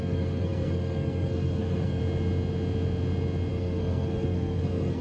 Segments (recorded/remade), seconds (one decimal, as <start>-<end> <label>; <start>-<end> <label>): 0.0-2.0 remade; 2.0-3.5 recorded; 3.5-5.0 remade